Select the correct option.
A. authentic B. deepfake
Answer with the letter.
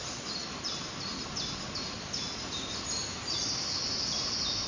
A